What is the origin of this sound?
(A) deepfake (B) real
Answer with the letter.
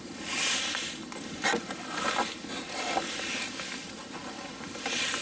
B